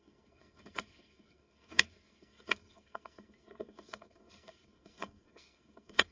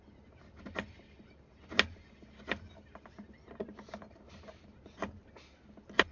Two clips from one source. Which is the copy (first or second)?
first